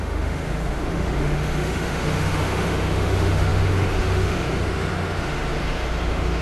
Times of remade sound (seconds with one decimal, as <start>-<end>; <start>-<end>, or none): 0.0-6.4